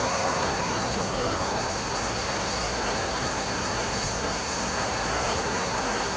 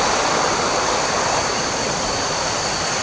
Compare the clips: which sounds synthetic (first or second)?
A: first